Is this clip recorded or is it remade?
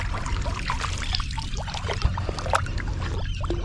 recorded